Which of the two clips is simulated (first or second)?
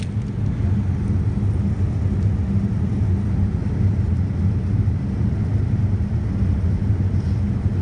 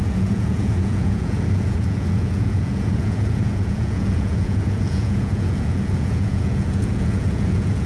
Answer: second